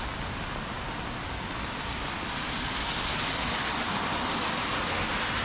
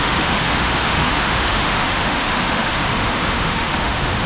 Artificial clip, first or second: second